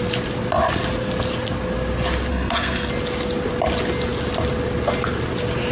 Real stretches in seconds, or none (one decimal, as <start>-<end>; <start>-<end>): 0.0-2.3; 2.9-5.7